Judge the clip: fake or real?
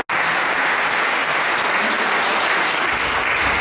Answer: real